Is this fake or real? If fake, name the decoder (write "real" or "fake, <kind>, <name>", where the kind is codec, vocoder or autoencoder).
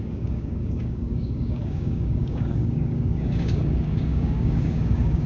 fake, codec, DAC